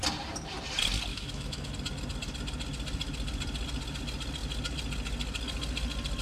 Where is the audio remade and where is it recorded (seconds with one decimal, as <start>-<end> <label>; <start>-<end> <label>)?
0.0-1.1 recorded; 1.1-1.7 remade; 1.7-6.2 recorded